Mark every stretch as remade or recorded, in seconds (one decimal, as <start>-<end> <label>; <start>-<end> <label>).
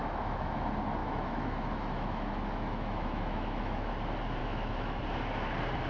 0.0-0.6 remade; 0.6-1.0 recorded; 1.0-3.9 remade; 3.9-4.4 recorded; 4.4-5.0 remade; 5.0-5.9 recorded